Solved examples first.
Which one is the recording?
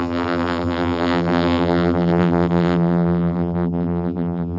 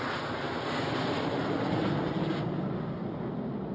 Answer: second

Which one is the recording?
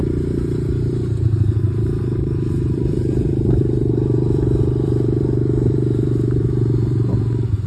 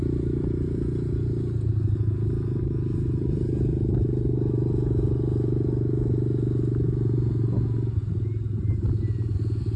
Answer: second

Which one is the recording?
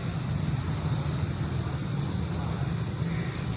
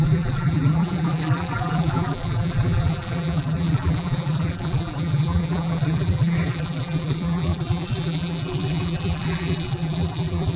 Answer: first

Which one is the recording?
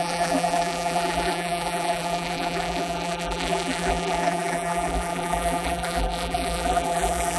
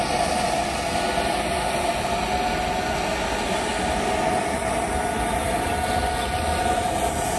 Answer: second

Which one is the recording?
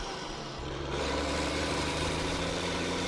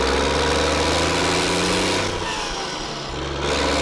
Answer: second